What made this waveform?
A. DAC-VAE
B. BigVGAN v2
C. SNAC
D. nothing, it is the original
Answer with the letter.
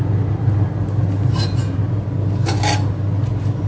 D